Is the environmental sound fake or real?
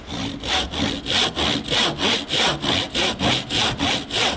real